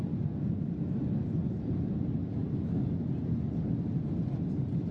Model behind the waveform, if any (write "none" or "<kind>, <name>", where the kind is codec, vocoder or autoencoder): none